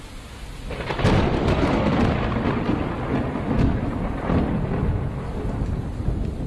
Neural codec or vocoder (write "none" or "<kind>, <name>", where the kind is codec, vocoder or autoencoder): none